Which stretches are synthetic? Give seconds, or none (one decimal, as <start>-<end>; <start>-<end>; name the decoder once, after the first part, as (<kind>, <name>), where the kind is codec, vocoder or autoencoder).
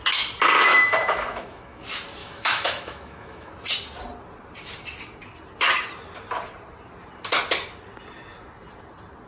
0.7-1.8 (autoencoder, DAC-VAE); 2.2-3.5